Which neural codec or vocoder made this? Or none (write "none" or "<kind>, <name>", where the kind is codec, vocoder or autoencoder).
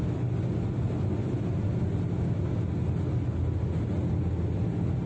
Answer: none